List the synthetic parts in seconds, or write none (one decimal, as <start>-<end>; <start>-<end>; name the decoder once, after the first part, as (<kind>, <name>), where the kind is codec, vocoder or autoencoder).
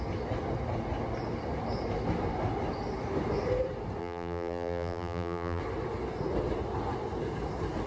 4.0-5.6 (vocoder, BigVGAN v2)